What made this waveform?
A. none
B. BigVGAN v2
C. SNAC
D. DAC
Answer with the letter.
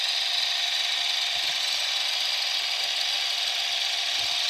A